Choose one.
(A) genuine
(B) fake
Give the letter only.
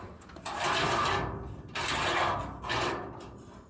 A